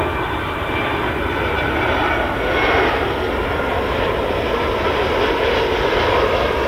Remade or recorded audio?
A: recorded